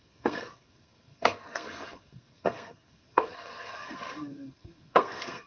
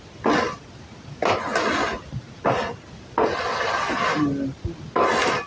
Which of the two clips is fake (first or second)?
first